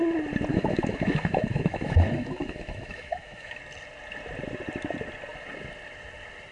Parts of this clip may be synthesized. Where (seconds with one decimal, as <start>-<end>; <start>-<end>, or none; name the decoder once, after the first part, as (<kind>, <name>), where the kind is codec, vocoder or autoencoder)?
0.5-3.6 (autoencoder, DAC-VAE)